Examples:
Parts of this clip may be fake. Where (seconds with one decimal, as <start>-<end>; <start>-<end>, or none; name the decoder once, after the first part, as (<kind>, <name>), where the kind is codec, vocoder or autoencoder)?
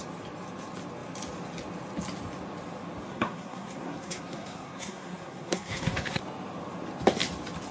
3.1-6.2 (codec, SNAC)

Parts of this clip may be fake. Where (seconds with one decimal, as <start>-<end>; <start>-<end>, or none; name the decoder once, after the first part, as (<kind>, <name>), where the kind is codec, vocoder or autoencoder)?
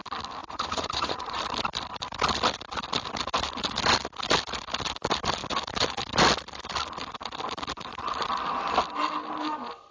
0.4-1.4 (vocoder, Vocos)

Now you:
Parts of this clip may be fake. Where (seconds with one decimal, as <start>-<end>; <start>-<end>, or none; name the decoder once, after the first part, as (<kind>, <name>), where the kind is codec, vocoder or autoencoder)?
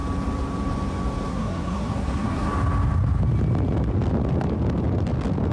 1.3-2.5 (codec, SNAC)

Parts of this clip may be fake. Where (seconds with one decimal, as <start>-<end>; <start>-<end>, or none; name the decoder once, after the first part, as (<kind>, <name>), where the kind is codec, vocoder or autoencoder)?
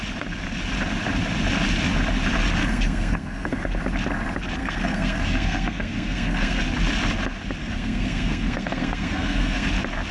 2.6-3.8 (codec, SNAC); 4.6-6.6; 7.6-9.7